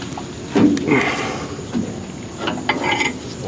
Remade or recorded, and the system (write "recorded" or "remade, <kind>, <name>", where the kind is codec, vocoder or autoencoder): recorded